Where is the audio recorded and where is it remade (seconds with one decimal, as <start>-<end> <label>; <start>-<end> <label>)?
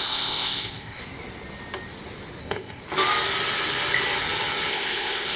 0.0-1.0 remade; 1.0-2.4 recorded; 2.4-2.8 remade; 2.8-4.7 recorded; 4.7-5.4 remade